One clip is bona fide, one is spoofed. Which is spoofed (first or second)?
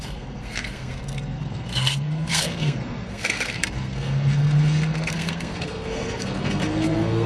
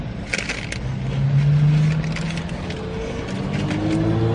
first